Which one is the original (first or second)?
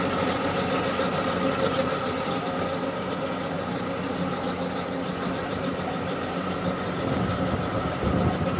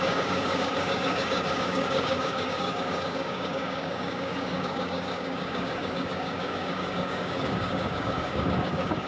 first